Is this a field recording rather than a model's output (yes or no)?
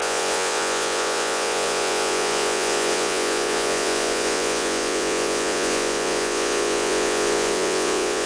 no